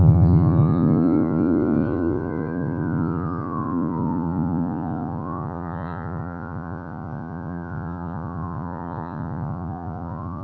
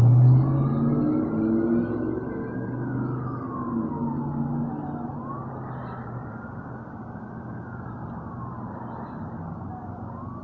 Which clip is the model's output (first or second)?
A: first